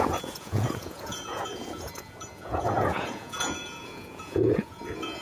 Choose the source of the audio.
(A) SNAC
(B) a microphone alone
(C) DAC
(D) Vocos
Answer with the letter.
D